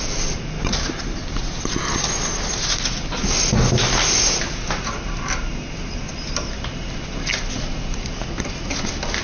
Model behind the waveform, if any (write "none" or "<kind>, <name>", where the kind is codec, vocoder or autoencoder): none